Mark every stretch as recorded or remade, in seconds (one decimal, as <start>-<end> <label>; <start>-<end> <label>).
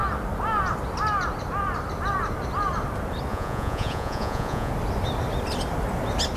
0.0-3.3 recorded; 3.3-4.7 remade; 4.7-6.4 recorded